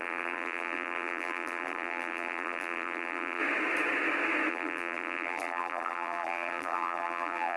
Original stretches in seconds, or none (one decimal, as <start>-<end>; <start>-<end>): 3.4-4.5